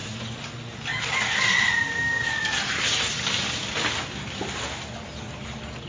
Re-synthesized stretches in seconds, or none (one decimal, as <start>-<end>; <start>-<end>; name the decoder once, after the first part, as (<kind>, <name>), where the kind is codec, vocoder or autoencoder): none